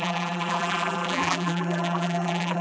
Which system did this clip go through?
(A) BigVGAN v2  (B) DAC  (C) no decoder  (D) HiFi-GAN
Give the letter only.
A